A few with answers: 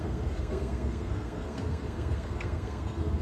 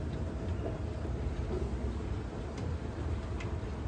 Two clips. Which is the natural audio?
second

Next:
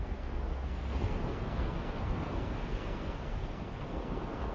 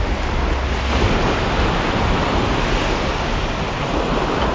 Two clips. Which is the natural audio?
second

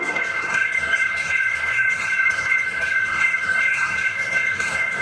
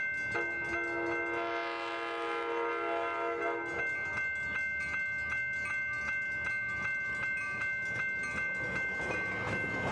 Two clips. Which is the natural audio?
second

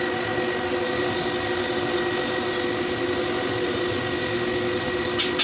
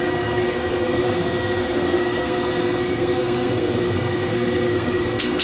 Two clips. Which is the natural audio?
first